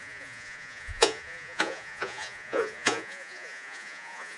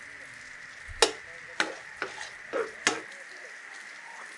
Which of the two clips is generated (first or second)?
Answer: first